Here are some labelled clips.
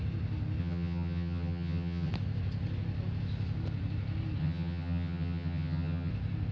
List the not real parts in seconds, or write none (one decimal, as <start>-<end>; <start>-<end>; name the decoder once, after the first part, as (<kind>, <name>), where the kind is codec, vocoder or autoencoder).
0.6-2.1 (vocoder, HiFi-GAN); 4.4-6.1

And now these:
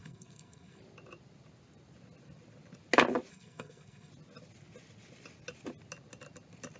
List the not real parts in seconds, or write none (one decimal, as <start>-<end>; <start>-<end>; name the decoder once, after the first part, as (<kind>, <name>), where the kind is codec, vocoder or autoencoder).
0.0-0.8 (codec, SNAC); 3.3-4.1

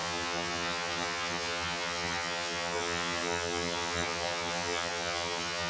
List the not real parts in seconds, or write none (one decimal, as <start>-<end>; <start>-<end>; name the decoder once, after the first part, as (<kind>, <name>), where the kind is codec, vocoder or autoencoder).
0.0-5.7 (vocoder, HiFi-GAN)